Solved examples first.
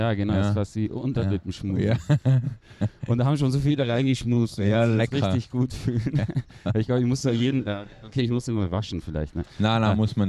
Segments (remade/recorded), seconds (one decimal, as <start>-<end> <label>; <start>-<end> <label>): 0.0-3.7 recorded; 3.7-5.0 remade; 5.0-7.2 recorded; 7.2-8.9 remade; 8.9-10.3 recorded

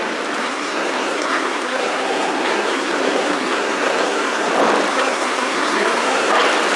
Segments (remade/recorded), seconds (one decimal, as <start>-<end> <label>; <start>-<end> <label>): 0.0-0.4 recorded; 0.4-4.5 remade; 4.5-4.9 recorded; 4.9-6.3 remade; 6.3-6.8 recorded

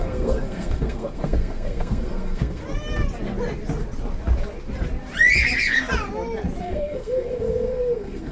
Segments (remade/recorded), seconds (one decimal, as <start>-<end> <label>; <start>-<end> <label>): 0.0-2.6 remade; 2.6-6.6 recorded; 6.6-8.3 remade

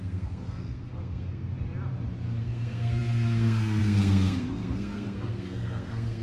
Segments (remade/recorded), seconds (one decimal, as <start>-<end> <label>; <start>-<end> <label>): 0.0-1.5 remade; 1.5-2.4 recorded; 2.4-6.2 remade

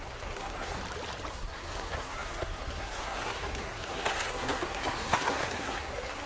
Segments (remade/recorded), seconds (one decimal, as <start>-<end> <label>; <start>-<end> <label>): 0.0-0.8 remade; 0.8-1.3 recorded; 1.3-6.3 remade